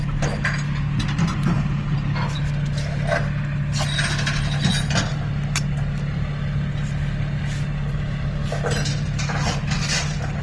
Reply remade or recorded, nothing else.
recorded